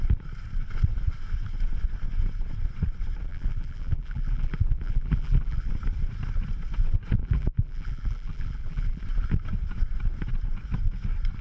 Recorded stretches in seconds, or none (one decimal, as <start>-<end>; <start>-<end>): 0.0-3.3; 5.7-7.2; 9.0-11.4